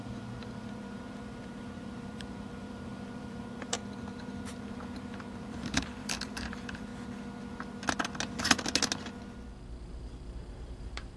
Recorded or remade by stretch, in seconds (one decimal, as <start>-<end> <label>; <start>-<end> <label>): 0.0-3.8 remade; 3.8-4.4 recorded; 4.4-6.9 remade; 6.9-9.9 recorded; 9.9-11.2 remade